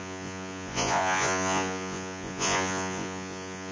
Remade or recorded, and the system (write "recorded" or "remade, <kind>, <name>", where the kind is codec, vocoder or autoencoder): remade, vocoder, Vocos